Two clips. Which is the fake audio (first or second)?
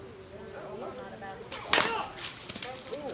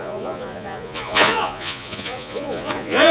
second